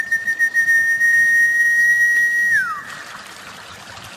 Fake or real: real